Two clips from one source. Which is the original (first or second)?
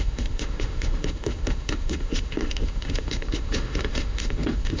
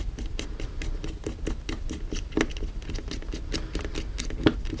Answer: second